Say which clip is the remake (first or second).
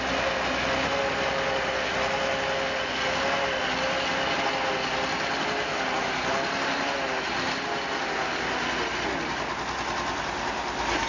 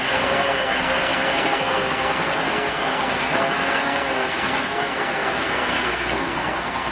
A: second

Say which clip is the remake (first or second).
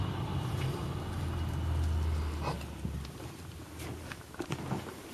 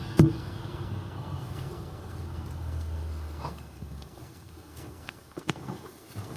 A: second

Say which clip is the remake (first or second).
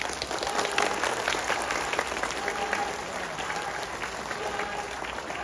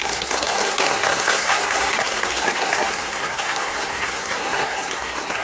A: second